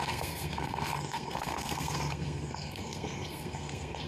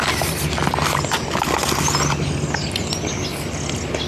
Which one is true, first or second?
second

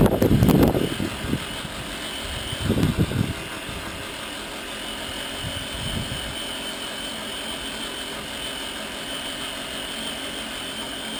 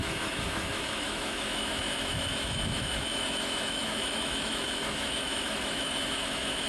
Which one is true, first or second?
first